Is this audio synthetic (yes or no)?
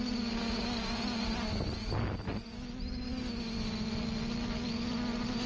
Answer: no